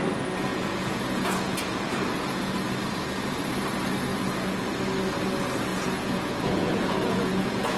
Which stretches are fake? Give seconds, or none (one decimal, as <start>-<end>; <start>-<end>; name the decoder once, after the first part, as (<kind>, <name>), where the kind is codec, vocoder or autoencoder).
0.5-2.4 (vocoder, Vocos); 4.1-4.7; 5.7-7.8